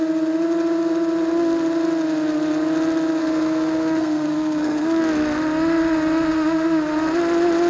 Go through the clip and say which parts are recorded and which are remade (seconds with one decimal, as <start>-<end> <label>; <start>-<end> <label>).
0.0-3.2 recorded; 3.2-5.0 remade; 5.0-7.7 recorded